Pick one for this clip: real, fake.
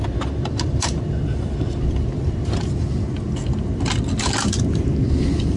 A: real